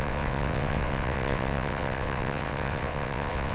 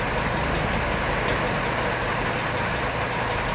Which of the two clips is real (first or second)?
second